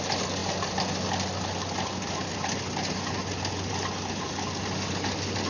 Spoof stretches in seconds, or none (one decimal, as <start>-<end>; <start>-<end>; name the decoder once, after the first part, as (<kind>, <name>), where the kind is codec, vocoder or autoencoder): none